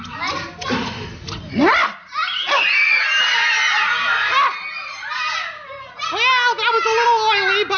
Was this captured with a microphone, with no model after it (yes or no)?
yes